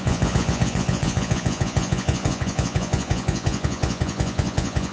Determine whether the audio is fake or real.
fake